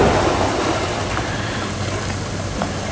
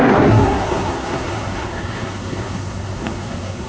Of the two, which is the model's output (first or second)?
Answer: second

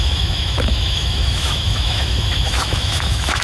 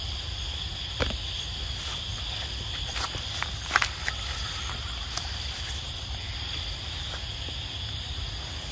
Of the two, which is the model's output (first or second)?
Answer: first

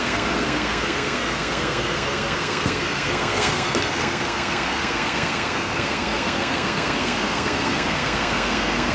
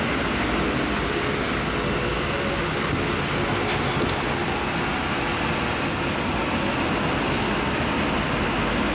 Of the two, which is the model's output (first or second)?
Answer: first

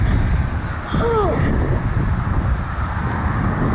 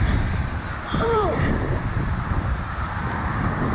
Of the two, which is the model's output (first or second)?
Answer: second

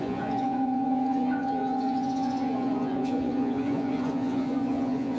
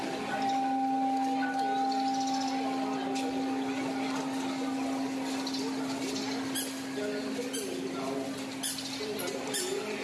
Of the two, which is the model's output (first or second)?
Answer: first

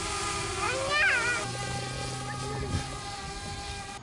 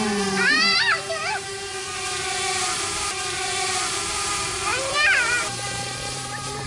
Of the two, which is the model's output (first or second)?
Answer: second